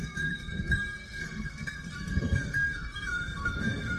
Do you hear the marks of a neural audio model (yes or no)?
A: yes